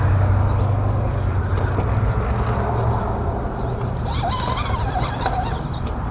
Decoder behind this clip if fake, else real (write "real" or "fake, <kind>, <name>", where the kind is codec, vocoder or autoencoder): real